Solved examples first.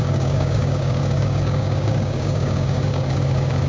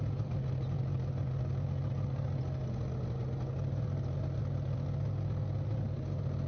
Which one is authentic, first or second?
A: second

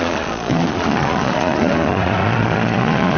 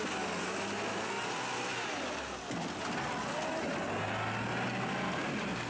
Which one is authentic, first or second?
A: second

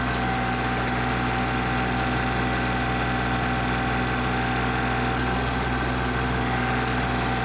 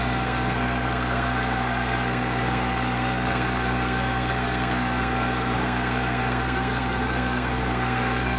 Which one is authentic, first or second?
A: first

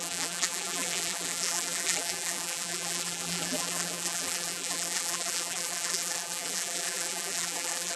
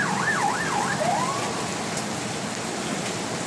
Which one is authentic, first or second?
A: second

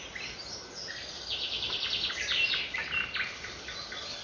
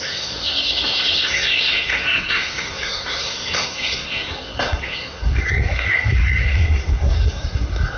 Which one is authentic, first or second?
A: first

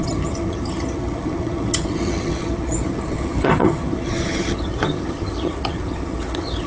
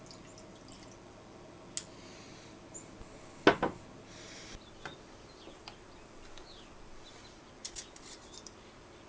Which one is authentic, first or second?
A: second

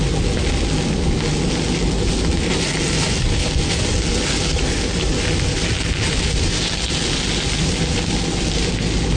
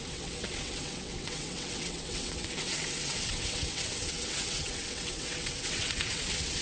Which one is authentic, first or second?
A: first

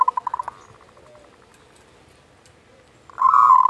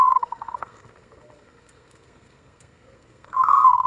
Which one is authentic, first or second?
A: first